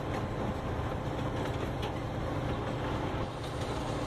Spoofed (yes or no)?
no